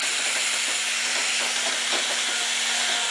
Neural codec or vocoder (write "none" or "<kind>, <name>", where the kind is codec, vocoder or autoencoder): none